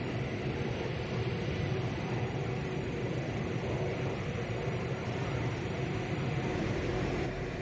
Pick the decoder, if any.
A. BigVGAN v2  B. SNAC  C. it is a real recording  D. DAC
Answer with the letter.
A